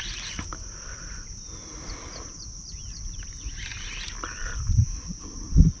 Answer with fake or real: real